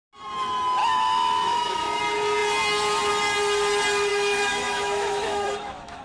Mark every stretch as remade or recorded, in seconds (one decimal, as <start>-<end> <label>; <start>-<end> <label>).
0.0-0.8 recorded; 0.8-2.0 remade; 2.0-4.1 recorded; 4.1-6.0 remade